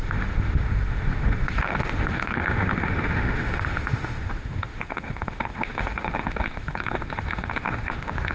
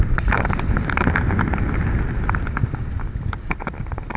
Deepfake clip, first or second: first